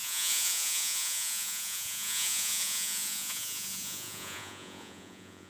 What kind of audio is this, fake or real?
fake